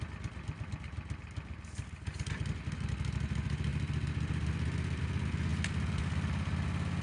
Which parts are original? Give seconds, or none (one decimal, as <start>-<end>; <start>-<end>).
0.0-7.0

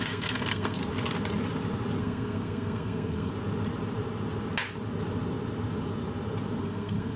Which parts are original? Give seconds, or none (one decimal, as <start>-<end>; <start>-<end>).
0.8-2.0; 3.3-6.6

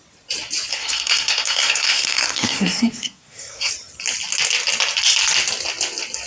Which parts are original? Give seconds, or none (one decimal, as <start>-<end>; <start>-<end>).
0.0-0.7; 3.7-6.3

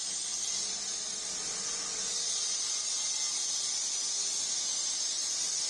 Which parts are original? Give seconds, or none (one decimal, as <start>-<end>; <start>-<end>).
0.0-5.7